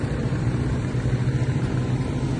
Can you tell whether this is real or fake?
fake